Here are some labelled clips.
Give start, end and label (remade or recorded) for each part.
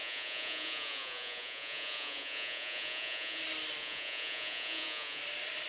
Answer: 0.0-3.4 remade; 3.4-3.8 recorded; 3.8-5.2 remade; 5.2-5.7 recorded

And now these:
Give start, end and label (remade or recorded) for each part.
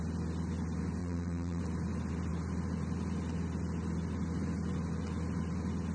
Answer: 0.0-1.0 recorded; 1.0-1.6 remade; 1.6-5.9 recorded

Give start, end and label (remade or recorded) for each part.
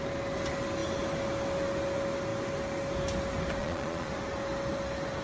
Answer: 0.0-3.6 recorded; 3.6-4.1 remade; 4.1-5.2 recorded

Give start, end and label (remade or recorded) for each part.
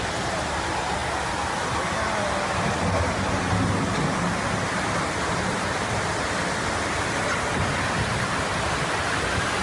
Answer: 0.0-9.6 recorded